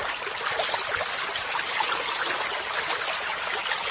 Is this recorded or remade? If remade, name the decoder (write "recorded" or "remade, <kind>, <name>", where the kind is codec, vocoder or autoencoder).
recorded